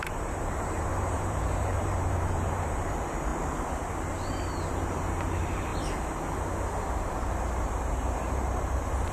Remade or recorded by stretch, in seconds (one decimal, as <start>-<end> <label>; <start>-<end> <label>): 0.0-3.3 remade; 3.3-4.7 recorded; 4.7-5.7 remade; 5.7-7.0 recorded; 7.0-9.1 remade

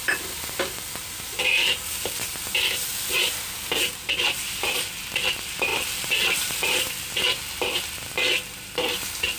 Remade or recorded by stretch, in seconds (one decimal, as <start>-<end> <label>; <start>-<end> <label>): 0.0-5.7 recorded; 5.7-6.8 remade; 6.8-9.4 recorded

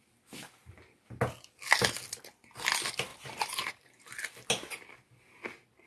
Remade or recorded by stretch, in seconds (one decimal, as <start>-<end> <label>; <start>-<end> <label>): 0.0-3.1 recorded; 3.1-4.0 remade; 4.0-5.9 recorded